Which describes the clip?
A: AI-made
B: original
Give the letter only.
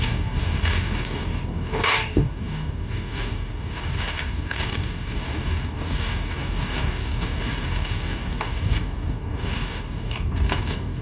A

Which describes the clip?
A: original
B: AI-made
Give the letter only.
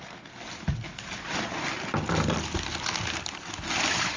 A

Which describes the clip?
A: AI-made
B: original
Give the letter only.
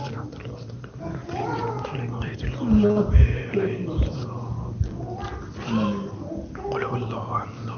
B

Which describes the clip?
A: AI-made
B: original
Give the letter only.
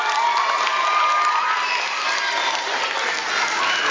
B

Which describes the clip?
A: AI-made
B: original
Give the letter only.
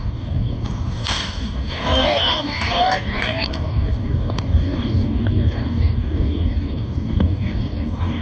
A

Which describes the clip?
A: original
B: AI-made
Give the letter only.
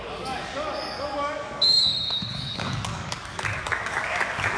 B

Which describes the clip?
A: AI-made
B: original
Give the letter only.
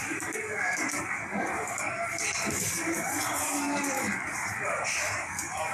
A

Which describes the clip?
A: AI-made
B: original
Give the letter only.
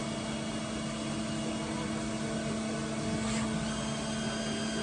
B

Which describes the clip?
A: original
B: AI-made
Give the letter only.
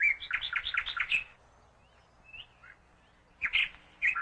A